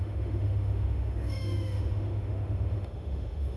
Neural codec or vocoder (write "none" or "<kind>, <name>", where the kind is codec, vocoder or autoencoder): autoencoder, DAC-VAE